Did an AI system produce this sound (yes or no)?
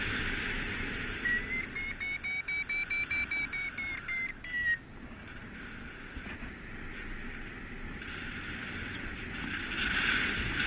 no